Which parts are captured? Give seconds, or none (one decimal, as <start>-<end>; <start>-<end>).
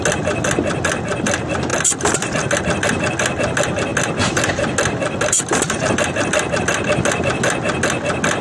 0.0-8.4